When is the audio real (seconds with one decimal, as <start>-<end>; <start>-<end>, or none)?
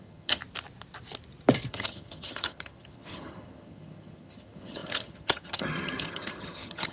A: 0.4-1.7